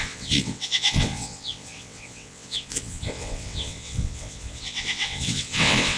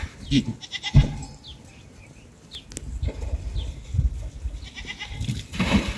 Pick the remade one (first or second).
first